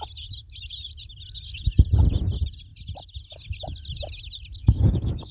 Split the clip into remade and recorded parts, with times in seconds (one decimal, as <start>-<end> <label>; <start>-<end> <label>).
0.0-4.6 recorded; 4.6-5.3 remade